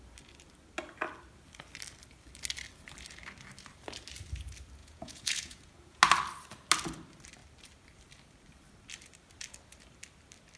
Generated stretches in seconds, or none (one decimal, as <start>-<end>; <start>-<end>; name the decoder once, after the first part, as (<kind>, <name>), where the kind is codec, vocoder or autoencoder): 4.8-6.0 (vocoder, Vocos)